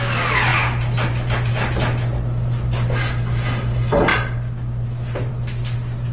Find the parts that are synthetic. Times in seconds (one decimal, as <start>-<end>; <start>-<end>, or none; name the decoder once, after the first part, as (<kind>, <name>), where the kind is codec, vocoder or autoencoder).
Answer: none